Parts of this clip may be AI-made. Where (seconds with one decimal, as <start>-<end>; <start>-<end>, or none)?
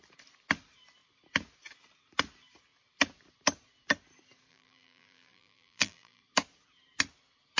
4.5-6.2